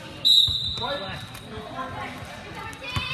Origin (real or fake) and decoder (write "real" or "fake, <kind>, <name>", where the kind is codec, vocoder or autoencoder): real